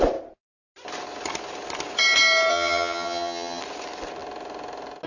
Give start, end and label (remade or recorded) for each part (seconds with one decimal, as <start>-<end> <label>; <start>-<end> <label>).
0.0-2.5 recorded; 2.5-3.6 remade; 3.6-5.1 recorded